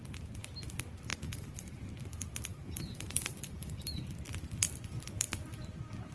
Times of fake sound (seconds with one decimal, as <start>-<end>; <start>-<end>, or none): 1.1-1.8; 2.5-4.0